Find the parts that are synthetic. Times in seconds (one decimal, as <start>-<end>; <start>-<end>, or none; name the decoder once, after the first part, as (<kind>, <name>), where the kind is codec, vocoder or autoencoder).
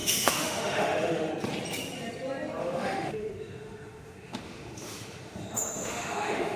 0.0-1.3 (autoencoder, DAC-VAE); 2.6-6.6